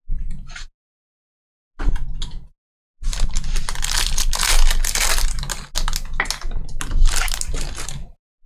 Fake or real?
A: real